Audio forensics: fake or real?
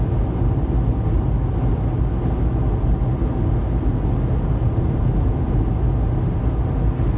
real